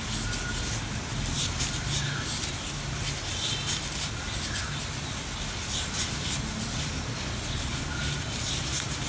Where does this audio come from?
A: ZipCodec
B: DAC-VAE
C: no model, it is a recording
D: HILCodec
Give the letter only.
C